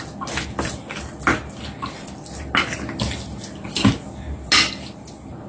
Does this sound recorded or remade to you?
recorded